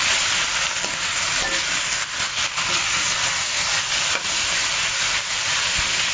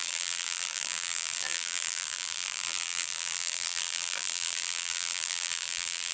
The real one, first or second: first